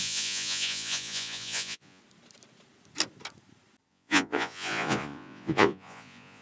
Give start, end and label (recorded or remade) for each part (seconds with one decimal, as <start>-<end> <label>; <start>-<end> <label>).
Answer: 0.0-2.0 remade; 2.0-3.9 recorded; 3.9-6.4 remade